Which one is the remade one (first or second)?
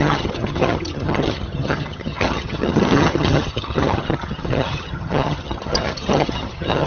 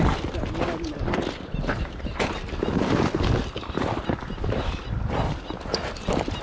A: first